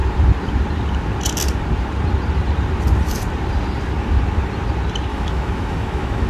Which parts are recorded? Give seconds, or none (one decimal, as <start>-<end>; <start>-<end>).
0.0-5.1